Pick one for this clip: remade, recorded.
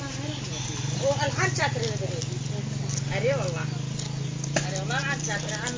recorded